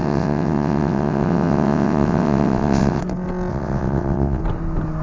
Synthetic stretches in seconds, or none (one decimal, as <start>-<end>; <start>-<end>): 0.0-3.0; 3.5-4.4

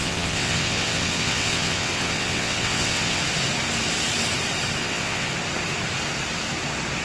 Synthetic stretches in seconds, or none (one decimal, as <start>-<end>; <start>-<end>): 0.0-3.2; 4.8-5.3

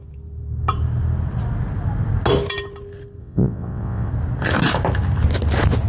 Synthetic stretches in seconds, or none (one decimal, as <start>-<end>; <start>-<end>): 3.2-4.1

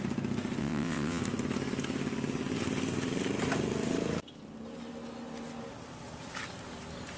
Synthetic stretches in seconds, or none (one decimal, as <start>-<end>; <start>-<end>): 0.6-1.2

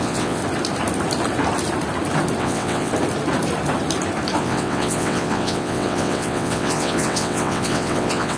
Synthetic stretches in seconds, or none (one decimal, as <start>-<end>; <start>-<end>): 0.0-0.4; 2.4-2.9; 4.4-8.4